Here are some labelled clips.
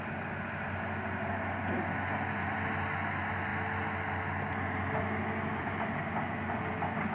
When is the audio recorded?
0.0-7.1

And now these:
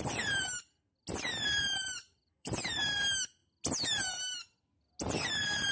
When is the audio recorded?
0.0-2.0; 2.8-5.7